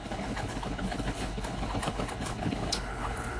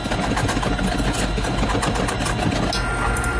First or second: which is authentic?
second